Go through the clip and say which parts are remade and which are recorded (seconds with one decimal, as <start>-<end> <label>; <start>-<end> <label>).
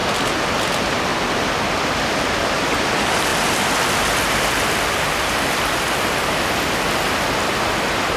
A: 0.0-1.1 remade; 1.1-2.4 recorded; 2.4-3.3 remade; 3.3-8.2 recorded